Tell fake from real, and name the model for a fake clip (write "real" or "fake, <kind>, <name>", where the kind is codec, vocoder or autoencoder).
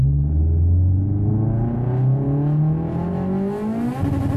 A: real